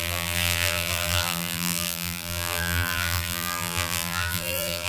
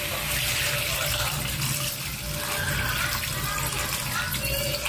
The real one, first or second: second